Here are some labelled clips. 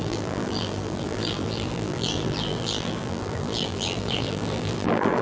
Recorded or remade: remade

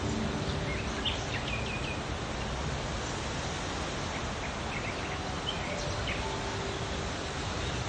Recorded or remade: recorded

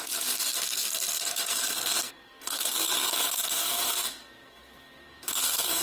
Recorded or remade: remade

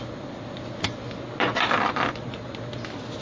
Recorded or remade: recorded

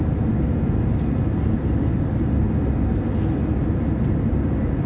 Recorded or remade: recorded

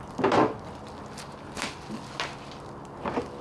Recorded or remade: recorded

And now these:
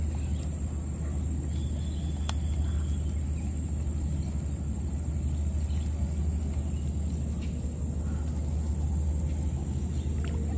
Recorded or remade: recorded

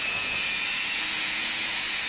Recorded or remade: remade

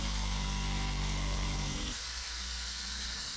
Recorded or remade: remade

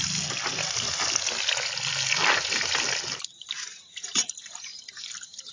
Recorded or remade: recorded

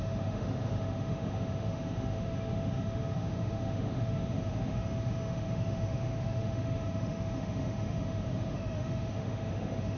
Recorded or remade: remade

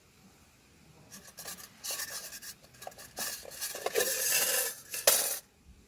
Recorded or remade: recorded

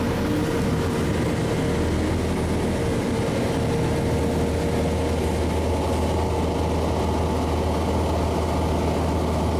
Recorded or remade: recorded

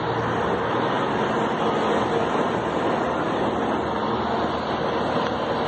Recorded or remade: recorded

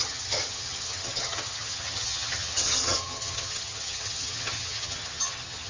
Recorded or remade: remade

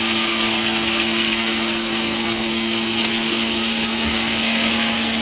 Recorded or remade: remade